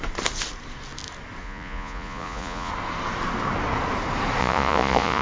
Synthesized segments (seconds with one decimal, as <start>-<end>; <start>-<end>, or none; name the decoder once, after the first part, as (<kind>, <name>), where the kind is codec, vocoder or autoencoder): 1.4-2.7 (vocoder, Vocos); 4.4-5.2